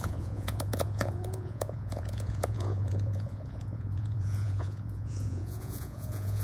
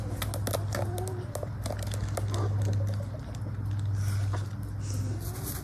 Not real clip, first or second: first